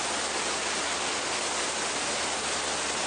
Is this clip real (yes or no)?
yes